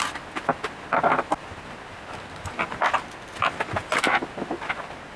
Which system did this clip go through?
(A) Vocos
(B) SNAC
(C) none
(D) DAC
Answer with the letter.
C